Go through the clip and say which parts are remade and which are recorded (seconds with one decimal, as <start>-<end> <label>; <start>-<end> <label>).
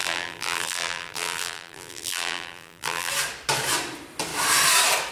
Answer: 0.0-3.1 remade; 3.1-5.1 recorded